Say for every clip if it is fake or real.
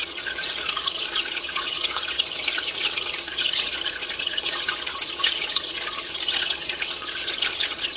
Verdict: fake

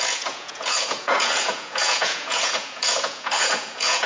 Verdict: fake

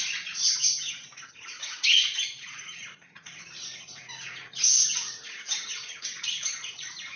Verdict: fake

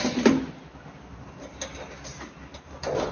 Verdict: real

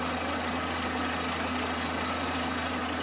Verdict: real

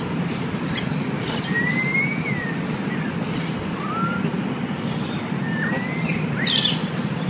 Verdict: real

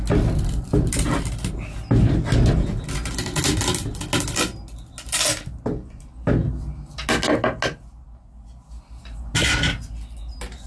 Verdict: real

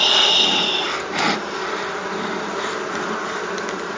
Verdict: real